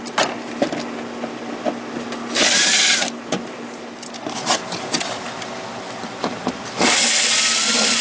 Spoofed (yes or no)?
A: no